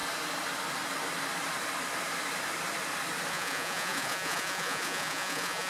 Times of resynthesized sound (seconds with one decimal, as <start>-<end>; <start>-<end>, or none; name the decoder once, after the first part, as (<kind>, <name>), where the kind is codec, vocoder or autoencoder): 3.3-5.7 (vocoder, Vocos)